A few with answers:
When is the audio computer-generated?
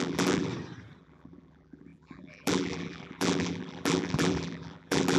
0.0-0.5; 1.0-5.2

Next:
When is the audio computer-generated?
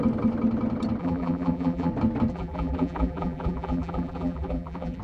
1.0-1.9; 2.3-5.0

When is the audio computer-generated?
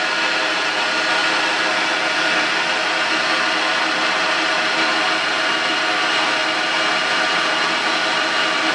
none